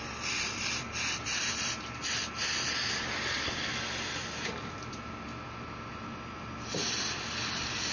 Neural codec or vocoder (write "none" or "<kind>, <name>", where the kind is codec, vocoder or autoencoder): none